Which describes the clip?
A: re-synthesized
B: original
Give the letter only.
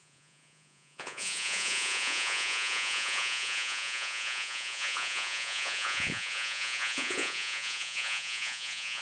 A